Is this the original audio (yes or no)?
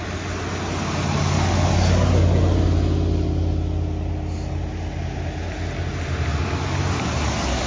yes